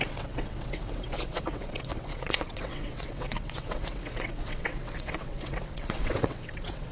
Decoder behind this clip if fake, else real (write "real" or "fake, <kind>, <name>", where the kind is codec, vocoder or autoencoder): fake, vocoder, WaveNeXt